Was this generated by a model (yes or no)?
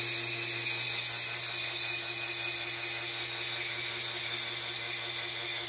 no